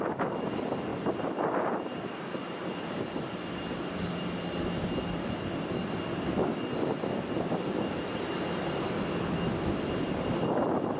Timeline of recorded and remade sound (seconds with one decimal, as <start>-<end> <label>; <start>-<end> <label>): 0.0-11.0 recorded

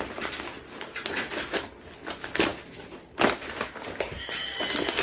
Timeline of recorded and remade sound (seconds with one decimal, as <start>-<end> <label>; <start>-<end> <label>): 0.0-5.0 recorded

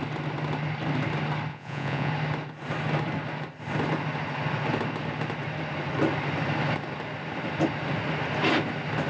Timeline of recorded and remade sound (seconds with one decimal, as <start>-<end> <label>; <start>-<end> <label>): 0.0-1.5 recorded; 1.5-2.1 remade; 2.1-9.1 recorded

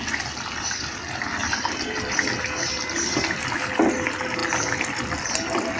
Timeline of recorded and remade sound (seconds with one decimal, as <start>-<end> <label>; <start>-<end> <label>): 0.0-5.8 recorded

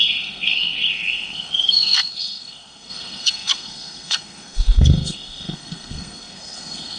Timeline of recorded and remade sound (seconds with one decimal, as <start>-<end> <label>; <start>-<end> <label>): 0.0-7.0 remade

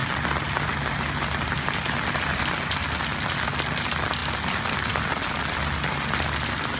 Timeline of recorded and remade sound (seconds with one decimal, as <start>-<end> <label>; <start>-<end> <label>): 0.0-6.8 recorded

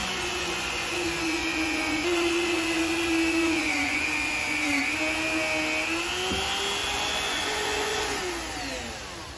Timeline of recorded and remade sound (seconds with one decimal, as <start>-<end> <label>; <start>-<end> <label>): 0.0-4.8 remade; 4.8-6.8 recorded; 6.8-8.2 remade; 8.2-9.4 recorded

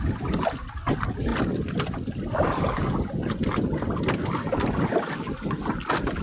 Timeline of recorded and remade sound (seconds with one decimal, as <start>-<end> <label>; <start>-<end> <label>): 0.0-6.2 recorded